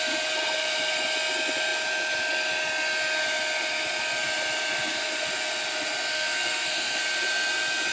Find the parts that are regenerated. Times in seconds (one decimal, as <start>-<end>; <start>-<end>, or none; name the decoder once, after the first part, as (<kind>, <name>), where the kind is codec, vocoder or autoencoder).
6.1-7.0 (codec, SNAC)